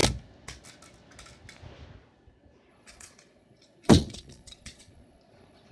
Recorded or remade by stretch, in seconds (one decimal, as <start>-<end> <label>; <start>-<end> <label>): 0.0-2.7 recorded; 2.7-5.7 remade